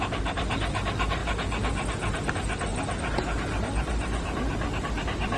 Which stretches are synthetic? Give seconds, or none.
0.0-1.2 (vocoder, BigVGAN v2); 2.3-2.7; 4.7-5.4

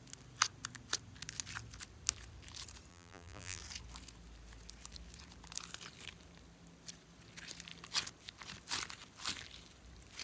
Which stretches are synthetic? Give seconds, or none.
2.9-3.6 (vocoder, BigVGAN v2)

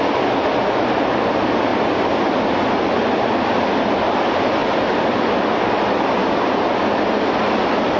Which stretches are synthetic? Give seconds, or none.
1.7-3.7 (vocoder, BigVGAN v2); 4.6-5.2; 6.2-6.8

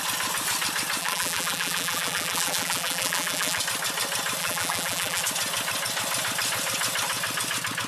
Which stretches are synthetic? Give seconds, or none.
1.0-3.6 (vocoder, BigVGAN v2); 4.4-5.2

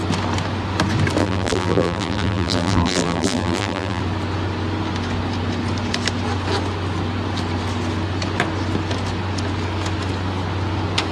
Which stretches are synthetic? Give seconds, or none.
1.2-4.0 (vocoder, BigVGAN v2)

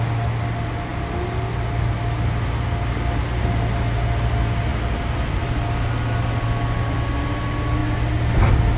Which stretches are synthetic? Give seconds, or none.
none

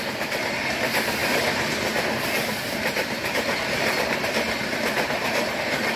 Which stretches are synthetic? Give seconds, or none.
none